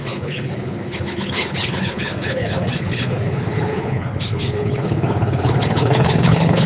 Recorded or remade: remade